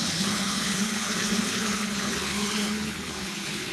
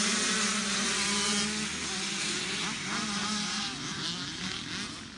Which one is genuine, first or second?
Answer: second